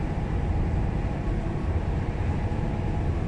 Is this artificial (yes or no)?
no